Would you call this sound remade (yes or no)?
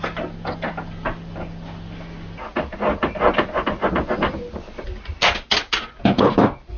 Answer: no